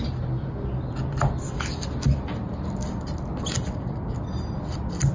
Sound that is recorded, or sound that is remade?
recorded